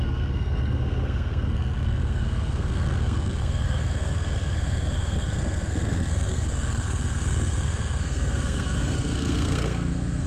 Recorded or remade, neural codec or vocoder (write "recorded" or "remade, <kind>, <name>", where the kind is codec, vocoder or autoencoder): remade, codec, SNAC